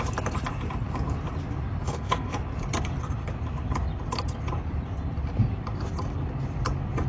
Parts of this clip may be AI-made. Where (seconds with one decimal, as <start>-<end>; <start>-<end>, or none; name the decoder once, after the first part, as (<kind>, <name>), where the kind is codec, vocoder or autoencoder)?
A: 1.8-2.3 (codec, SNAC)